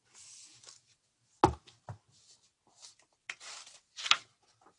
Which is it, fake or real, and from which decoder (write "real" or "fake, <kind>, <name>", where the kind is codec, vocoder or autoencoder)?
real